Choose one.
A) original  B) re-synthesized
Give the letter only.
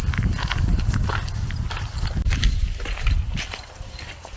A